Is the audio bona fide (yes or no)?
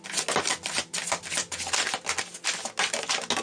yes